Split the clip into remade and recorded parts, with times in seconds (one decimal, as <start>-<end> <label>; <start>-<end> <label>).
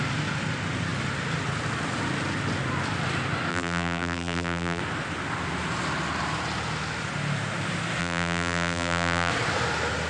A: 0.0-3.5 recorded; 3.5-4.8 remade; 4.8-8.0 recorded; 8.0-9.3 remade; 9.3-10.1 recorded